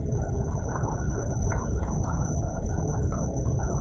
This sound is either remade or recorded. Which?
remade